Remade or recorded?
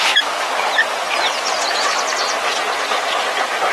recorded